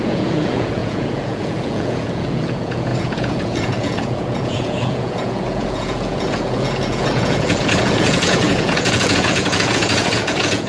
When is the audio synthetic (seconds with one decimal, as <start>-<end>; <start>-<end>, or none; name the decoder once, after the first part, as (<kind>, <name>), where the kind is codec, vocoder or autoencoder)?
0.0-10.7 (vocoder, Vocos)